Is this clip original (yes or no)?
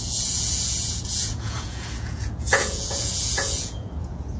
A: no